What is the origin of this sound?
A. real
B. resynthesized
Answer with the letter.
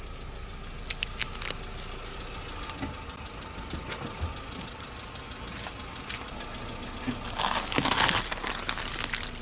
A